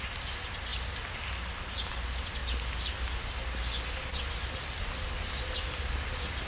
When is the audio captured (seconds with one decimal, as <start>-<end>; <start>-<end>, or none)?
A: 0.0-6.5